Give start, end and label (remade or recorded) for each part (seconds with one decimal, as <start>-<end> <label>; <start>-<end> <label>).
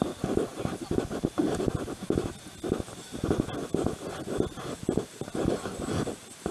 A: 0.0-6.5 recorded